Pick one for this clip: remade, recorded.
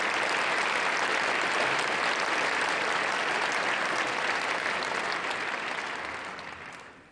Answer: recorded